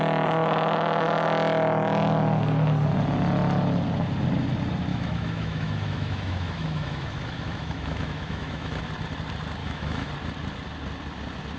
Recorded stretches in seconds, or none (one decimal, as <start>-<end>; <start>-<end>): 0.0-4.9; 8.8-9.6; 10.1-11.6